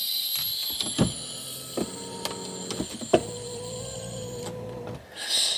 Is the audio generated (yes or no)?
no